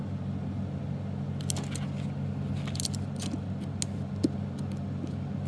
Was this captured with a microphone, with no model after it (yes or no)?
yes